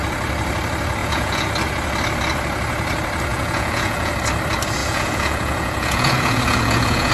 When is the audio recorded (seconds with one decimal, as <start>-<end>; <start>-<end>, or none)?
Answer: 0.0-1.0; 1.5-3.3; 4.1-4.8